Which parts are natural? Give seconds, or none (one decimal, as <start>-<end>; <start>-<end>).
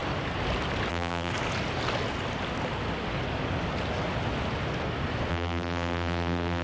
0.0-0.9; 1.3-5.3